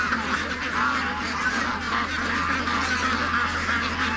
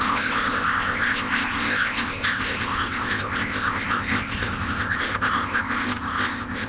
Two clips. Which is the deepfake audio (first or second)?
second